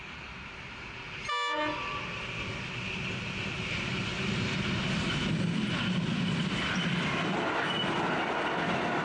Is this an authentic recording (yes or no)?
yes